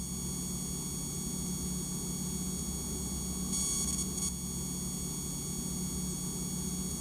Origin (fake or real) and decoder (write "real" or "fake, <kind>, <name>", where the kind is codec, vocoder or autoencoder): real